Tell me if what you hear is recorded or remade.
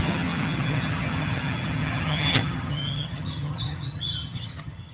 remade